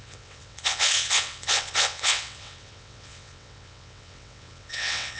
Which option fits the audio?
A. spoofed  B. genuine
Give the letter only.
A